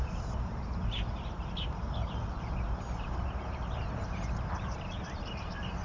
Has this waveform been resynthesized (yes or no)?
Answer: yes